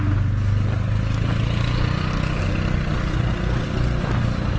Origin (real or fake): real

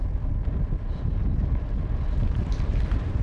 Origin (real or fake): real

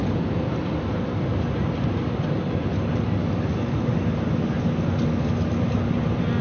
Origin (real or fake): real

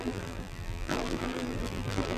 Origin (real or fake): fake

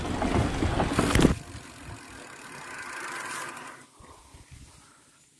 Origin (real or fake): real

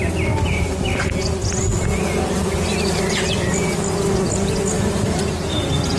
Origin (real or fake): real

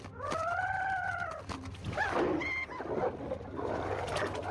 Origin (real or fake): real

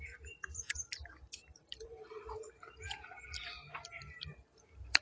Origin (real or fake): fake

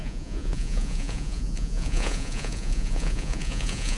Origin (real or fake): fake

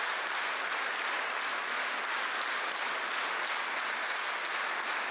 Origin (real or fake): real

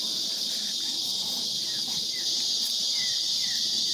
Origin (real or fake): fake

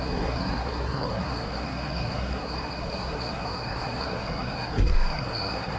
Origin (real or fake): fake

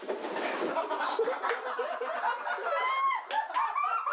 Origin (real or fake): real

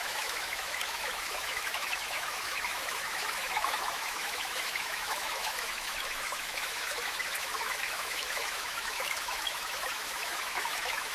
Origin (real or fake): fake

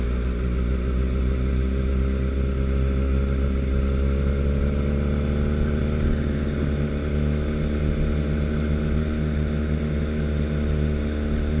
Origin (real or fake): real